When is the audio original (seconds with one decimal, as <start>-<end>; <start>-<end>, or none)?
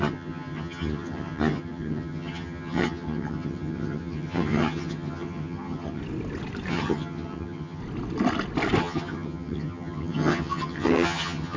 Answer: 6.0-6.7; 7.8-8.8